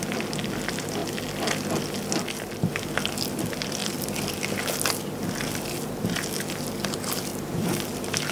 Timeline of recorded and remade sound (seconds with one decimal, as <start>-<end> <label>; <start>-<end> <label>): 0.0-3.8 recorded; 3.8-4.7 remade; 4.7-7.3 recorded; 7.3-7.9 remade; 7.9-8.3 recorded